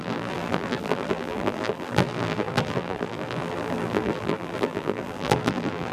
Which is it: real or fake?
fake